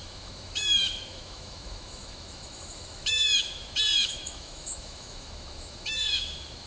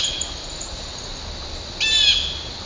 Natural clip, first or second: second